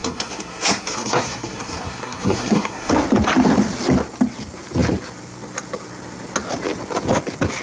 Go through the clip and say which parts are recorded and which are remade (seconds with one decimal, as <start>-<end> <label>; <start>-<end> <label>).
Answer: 0.0-2.9 remade; 2.9-7.6 recorded